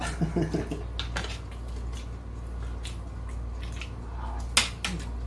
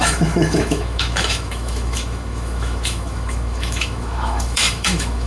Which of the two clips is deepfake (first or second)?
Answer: second